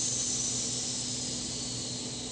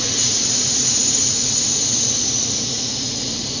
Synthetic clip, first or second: second